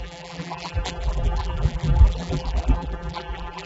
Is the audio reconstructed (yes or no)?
yes